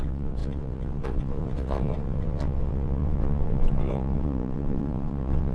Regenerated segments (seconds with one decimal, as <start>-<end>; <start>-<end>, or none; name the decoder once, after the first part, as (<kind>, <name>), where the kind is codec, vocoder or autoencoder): 0.0-5.5 (vocoder, WaveNeXt)

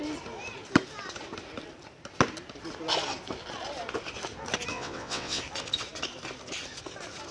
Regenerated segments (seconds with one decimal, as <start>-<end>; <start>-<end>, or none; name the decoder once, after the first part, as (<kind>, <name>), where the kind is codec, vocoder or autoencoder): 4.7-5.4 (vocoder, WaveNeXt)

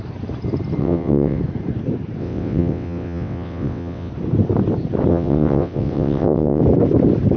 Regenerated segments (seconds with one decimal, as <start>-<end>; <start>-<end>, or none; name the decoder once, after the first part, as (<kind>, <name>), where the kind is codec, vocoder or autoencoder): 0.8-1.4 (vocoder, WaveNeXt); 2.2-4.1; 5.1-6.6